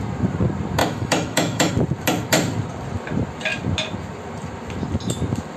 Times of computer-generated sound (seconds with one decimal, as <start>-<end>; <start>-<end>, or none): 0.8-1.7